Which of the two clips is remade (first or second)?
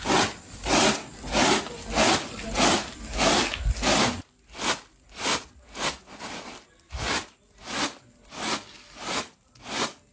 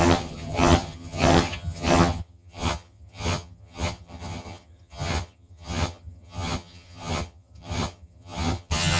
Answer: second